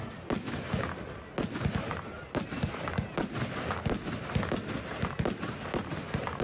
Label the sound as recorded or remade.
recorded